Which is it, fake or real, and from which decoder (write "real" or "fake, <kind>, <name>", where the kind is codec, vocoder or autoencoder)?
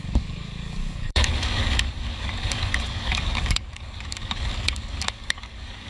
fake, codec, DAC